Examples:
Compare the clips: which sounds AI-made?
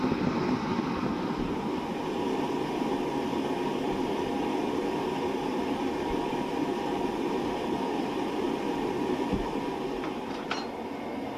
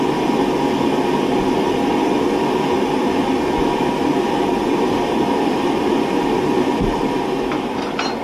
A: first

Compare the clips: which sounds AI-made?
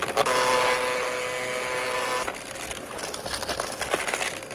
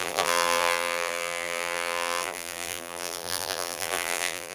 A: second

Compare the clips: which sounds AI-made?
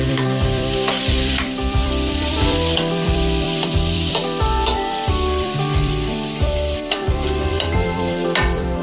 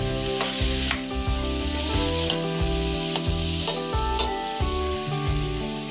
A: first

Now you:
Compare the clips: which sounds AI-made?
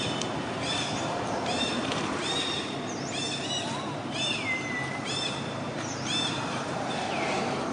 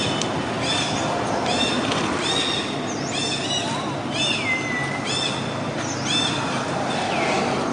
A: first